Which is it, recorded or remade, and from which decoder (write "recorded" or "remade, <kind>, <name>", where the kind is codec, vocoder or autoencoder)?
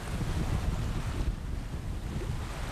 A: recorded